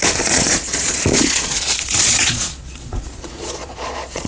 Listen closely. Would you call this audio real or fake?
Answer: fake